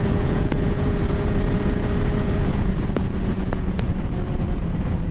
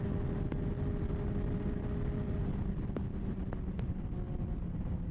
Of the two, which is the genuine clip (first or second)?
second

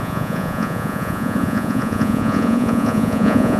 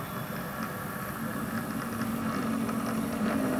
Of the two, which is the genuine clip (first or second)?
second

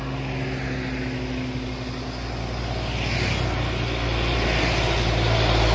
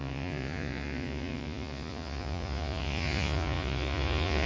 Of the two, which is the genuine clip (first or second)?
first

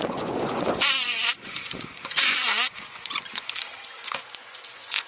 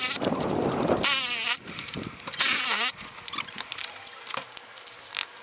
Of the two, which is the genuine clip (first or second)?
second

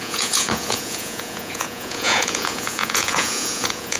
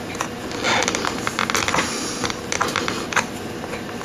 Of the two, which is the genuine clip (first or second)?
second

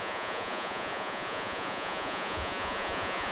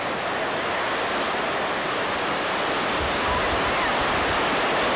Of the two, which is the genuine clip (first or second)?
second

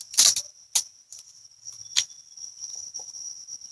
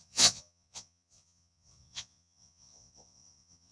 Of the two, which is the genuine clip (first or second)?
first